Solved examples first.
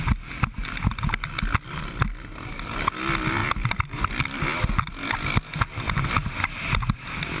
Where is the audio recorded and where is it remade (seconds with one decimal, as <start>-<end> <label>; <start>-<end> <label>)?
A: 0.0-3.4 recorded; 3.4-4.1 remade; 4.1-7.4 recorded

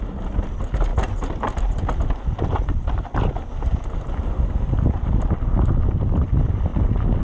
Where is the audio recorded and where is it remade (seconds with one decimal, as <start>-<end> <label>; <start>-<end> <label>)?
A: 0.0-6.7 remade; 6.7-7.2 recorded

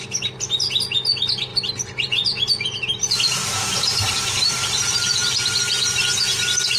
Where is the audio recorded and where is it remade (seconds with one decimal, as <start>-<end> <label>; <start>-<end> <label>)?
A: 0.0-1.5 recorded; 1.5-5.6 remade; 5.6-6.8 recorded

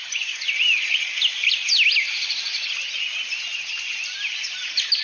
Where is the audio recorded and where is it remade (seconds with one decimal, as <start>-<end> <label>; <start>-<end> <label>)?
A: 0.0-3.5 recorded; 3.5-4.6 remade; 4.6-5.0 recorded

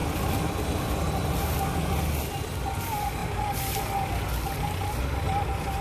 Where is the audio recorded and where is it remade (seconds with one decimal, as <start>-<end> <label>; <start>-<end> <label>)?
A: 0.0-5.8 recorded

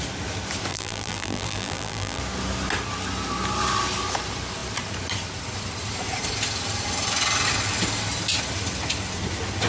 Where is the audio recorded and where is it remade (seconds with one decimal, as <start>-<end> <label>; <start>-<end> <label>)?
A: 0.0-0.7 recorded; 0.7-2.2 remade; 2.2-9.7 recorded